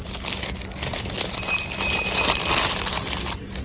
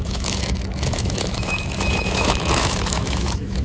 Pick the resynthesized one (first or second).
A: second